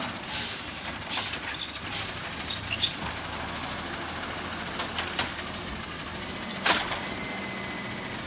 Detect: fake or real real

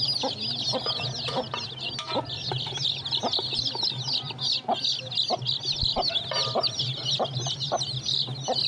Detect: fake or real real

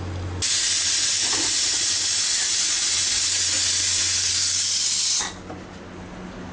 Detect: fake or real real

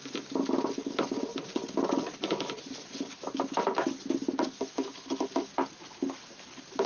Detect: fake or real real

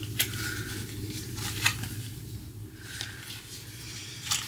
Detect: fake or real real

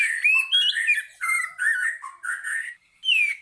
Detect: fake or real real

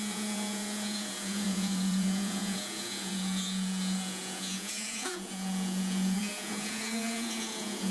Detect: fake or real fake